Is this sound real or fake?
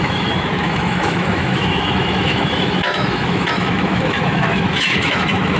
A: fake